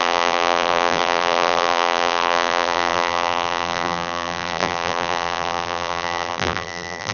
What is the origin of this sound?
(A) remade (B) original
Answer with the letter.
A